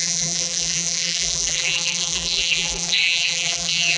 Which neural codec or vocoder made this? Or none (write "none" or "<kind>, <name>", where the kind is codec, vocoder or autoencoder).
vocoder, BigVGAN v2